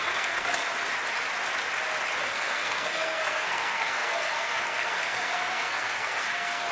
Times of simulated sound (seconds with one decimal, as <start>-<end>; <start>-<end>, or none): 0.0-0.6; 2.2-6.7